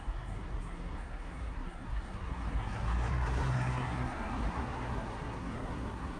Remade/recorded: remade